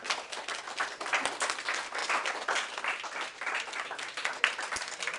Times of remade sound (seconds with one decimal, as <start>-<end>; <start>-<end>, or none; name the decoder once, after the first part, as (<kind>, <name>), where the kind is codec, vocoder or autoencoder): none